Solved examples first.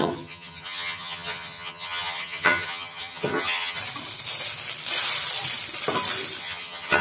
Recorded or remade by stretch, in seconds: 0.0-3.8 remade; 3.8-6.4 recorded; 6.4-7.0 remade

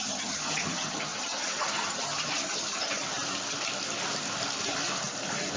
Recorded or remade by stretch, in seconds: 0.0-3.0 remade; 3.0-5.6 recorded

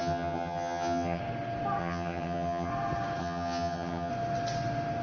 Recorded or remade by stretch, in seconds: 0.0-1.2 remade; 1.2-1.8 recorded; 1.8-2.7 remade; 2.7-3.2 recorded; 3.2-4.1 remade; 4.1-5.0 recorded

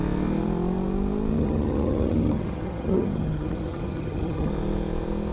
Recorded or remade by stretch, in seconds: 0.0-1.3 recorded; 1.3-4.5 remade; 4.5-5.3 recorded

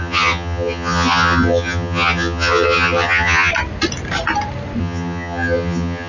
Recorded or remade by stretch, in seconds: 0.0-3.5 remade; 3.5-4.8 recorded; 4.8-6.1 remade

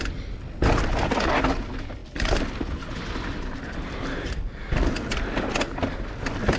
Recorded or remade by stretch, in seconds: 0.0-6.6 recorded

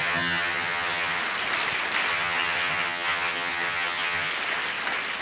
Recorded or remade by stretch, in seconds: 0.0-1.2 remade; 1.2-2.1 recorded; 2.1-4.3 remade; 4.3-5.2 recorded

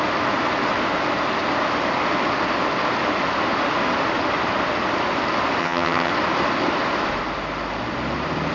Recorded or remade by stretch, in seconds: 0.0-5.6 recorded; 5.6-6.1 remade; 6.1-8.5 recorded